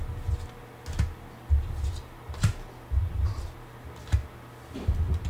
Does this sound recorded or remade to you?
recorded